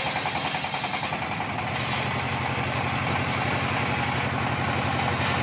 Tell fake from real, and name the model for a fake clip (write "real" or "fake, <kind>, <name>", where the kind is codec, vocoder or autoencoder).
real